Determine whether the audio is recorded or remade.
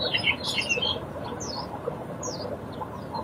recorded